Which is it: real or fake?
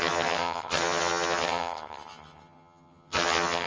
fake